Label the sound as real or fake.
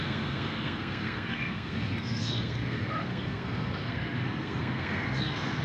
fake